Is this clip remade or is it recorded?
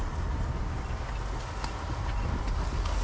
recorded